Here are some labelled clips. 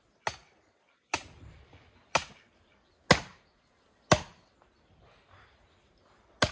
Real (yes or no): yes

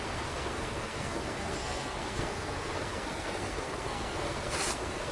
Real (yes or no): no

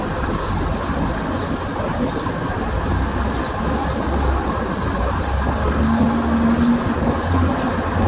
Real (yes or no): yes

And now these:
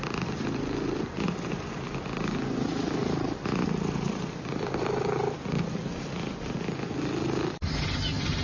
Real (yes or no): yes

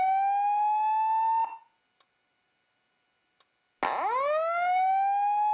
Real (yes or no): yes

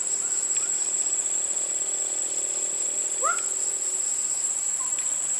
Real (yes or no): no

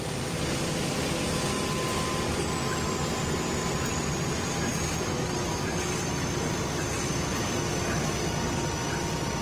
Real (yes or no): yes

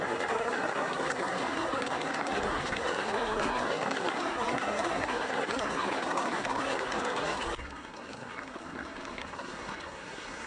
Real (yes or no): no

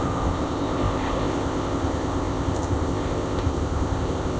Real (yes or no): no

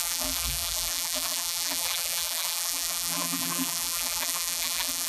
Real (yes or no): no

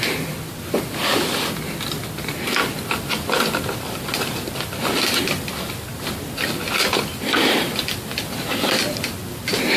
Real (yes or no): yes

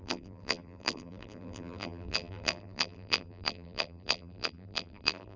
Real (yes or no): no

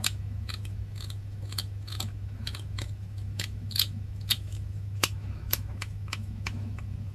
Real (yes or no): no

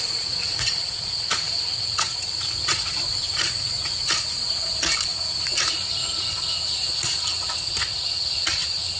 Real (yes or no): no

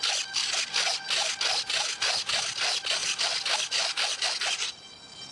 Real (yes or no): yes